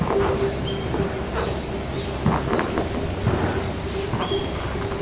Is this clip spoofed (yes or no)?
no